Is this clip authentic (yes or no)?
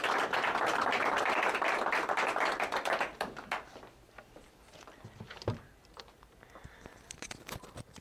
yes